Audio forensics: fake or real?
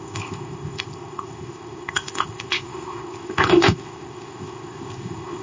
fake